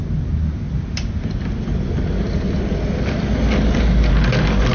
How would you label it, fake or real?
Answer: real